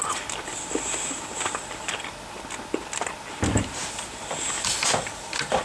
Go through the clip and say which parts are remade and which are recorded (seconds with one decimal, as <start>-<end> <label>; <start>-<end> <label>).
0.0-5.6 recorded